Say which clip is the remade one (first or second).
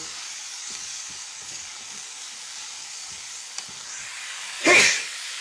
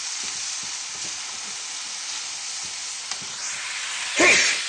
first